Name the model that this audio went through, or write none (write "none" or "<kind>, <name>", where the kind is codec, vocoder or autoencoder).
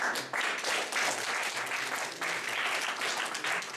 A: none